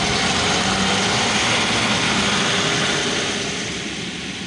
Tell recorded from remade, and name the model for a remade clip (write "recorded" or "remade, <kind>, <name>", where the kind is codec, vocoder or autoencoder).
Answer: recorded